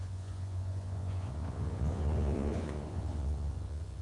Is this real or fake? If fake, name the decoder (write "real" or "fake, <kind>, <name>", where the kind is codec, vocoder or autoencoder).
fake, vocoder, Vocos